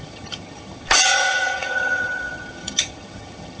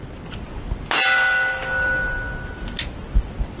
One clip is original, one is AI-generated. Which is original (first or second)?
second